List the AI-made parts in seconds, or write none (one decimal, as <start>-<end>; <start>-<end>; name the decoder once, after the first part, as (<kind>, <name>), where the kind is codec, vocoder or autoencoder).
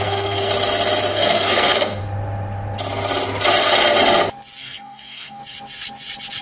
0.0-0.5 (codec, SNAC); 1.1-2.0; 4.6-5.4